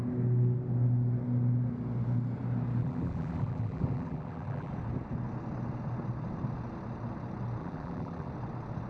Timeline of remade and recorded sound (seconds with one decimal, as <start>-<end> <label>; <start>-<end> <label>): 0.0-2.8 recorded; 2.8-4.7 remade; 4.7-7.6 recorded; 7.6-8.3 remade; 8.3-8.9 recorded